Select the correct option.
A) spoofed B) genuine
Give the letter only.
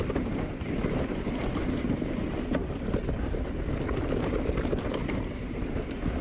B